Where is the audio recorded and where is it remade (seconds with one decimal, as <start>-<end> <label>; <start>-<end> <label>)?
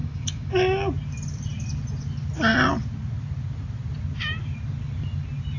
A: 0.0-0.5 remade; 0.5-5.6 recorded